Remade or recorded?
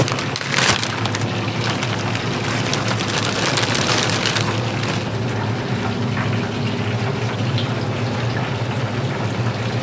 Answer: recorded